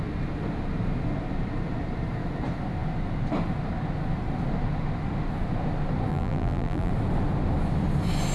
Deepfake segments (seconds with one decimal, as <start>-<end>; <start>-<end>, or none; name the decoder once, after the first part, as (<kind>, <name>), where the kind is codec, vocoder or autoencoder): 6.1-6.9 (vocoder, BigVGAN v2)